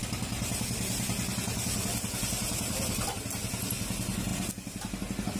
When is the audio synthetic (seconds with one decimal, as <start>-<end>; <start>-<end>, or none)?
none